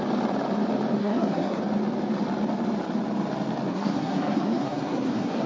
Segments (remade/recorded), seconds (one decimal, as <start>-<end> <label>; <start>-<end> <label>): 0.0-1.0 recorded; 1.0-1.6 remade; 1.6-3.7 recorded; 3.7-5.5 remade